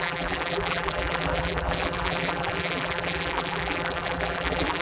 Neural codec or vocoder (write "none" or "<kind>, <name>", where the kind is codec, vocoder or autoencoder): vocoder, BigVGAN v2